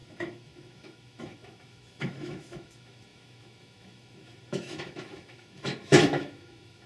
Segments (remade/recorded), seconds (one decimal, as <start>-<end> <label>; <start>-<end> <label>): 0.0-6.9 remade

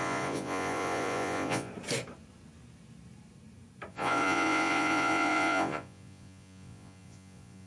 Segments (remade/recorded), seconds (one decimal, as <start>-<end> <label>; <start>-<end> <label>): 0.0-1.7 remade; 1.7-3.9 recorded; 3.9-7.7 remade

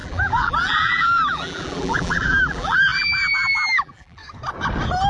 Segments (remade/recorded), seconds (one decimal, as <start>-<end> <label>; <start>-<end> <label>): 0.0-4.2 remade; 4.2-5.1 recorded

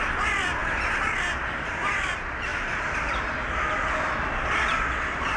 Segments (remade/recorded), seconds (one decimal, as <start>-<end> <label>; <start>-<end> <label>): 0.0-5.4 recorded

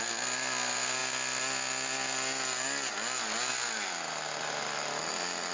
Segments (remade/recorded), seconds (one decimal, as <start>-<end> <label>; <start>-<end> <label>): 0.0-5.5 recorded